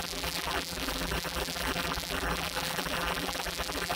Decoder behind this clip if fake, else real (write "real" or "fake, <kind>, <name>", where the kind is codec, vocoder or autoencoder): fake, vocoder, BigVGAN v2